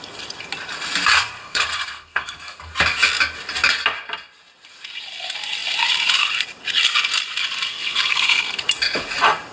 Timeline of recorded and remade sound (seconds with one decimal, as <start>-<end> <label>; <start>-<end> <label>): 0.0-1.4 recorded; 1.4-2.6 remade; 2.6-7.7 recorded; 7.7-8.6 remade; 8.6-9.5 recorded